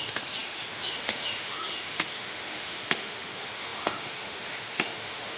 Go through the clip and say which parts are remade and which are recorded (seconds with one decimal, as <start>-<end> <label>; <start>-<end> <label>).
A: 0.0-5.4 remade